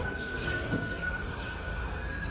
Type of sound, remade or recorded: remade